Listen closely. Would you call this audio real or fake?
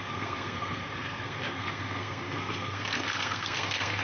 fake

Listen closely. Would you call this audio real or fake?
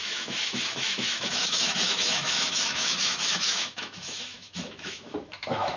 fake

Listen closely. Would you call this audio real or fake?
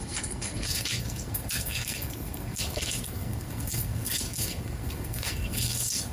fake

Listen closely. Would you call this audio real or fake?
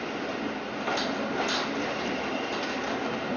real